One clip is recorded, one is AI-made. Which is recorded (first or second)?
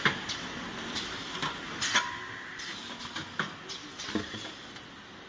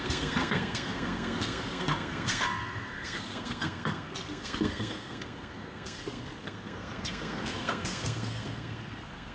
first